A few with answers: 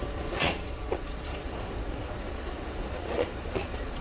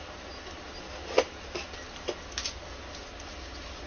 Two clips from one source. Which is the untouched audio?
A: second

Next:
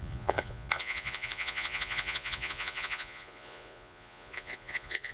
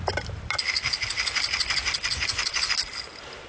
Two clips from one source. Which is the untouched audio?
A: second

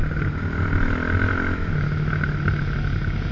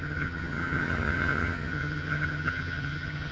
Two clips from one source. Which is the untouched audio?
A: first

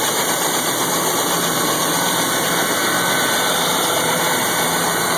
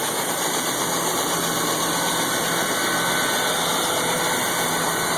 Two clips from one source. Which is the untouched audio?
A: second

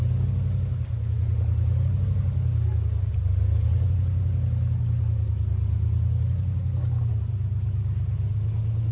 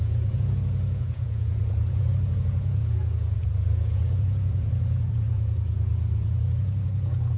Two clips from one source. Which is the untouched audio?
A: first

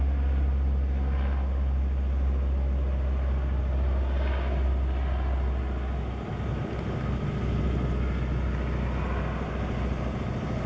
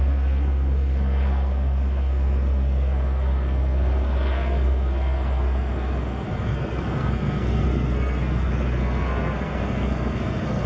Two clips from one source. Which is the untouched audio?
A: first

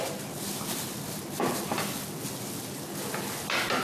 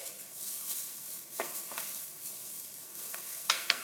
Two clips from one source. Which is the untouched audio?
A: first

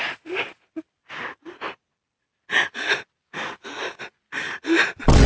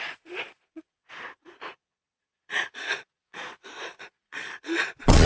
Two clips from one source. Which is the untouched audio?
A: first